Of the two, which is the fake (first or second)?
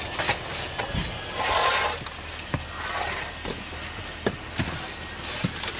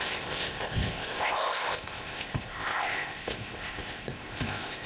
second